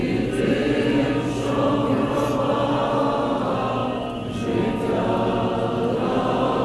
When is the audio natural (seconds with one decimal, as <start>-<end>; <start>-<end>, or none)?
2.5-6.6